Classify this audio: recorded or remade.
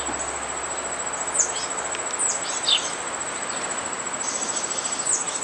recorded